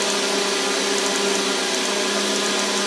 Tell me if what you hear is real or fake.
real